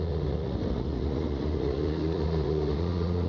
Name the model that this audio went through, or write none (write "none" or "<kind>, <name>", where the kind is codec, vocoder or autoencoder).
vocoder, Vocos